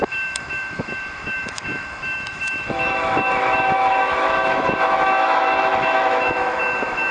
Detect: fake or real fake